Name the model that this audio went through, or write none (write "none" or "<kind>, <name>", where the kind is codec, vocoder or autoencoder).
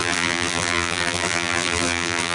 vocoder, BigVGAN v2